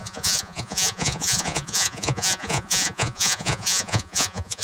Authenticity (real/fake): fake